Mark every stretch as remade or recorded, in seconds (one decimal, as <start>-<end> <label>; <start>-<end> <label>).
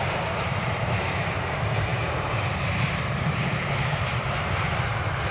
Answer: 0.0-5.3 remade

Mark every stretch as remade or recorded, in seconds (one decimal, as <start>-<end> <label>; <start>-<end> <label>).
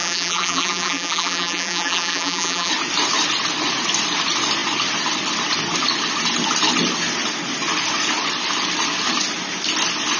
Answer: 0.0-2.7 remade; 2.7-10.2 recorded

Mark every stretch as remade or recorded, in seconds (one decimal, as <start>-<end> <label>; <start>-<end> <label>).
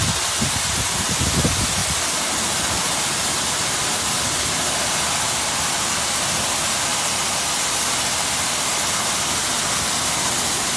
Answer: 0.0-1.8 recorded; 1.8-5.7 remade; 5.7-6.9 recorded; 6.9-8.0 remade; 8.0-10.8 recorded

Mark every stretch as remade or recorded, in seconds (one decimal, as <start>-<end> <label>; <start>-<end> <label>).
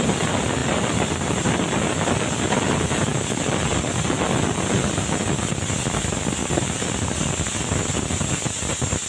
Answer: 0.0-0.6 recorded; 0.6-1.3 remade; 1.3-3.1 recorded; 3.1-3.8 remade; 3.8-6.4 recorded; 6.4-8.0 remade; 8.0-9.1 recorded